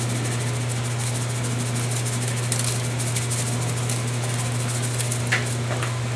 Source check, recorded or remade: recorded